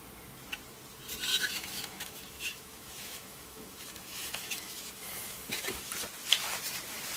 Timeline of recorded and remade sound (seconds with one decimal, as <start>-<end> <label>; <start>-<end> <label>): 0.0-1.3 recorded; 1.3-5.6 remade; 5.6-7.2 recorded